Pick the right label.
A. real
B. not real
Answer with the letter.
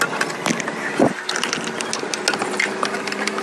A